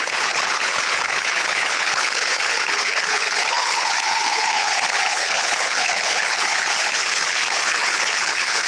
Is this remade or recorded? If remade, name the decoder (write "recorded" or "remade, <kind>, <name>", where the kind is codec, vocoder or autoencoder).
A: remade, codec, HILCodec